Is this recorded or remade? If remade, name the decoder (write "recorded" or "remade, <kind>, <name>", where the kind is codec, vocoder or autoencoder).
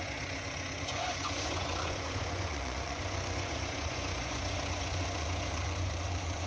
remade, vocoder, Vocos